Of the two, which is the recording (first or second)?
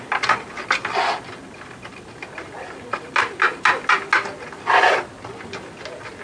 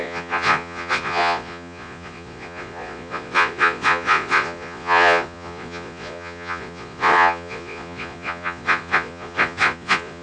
first